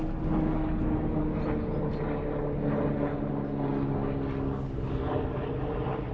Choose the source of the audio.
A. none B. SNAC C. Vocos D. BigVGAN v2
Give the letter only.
A